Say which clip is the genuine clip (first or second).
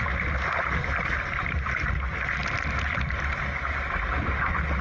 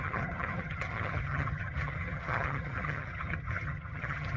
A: first